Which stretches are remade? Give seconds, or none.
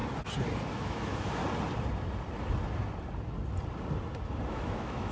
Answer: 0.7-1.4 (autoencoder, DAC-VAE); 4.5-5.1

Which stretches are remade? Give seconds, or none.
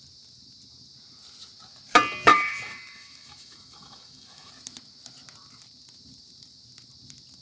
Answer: 2.3-4.5 (autoencoder, DAC-VAE)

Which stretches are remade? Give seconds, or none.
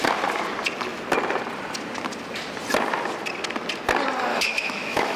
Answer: 4.3-5.2 (autoencoder, DAC-VAE)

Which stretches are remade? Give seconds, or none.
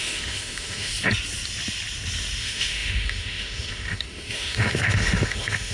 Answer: 0.0-0.9 (autoencoder, DAC-VAE); 2.4-5.7